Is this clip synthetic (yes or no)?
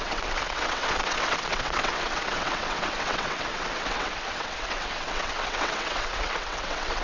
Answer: yes